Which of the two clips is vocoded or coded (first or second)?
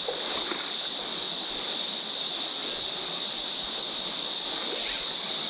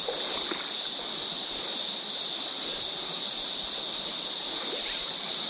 second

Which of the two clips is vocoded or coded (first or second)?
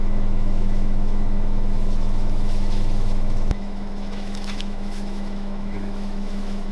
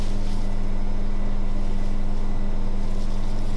first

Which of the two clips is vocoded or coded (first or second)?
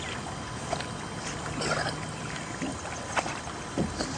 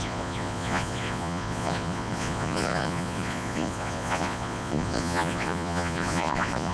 second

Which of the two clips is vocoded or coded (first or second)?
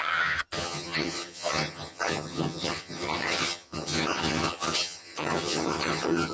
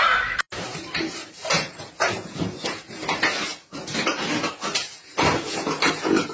first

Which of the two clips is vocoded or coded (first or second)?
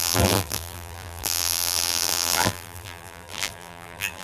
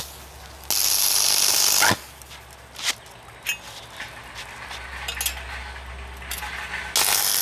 first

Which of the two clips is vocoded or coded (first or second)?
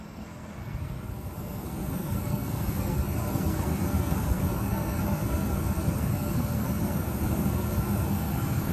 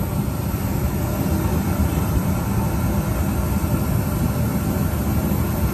first